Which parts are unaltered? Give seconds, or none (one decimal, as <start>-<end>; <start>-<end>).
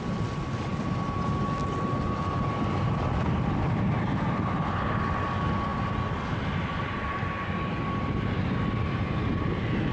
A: 0.0-9.9